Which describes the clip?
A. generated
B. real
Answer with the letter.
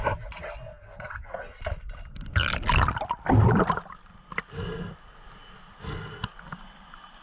B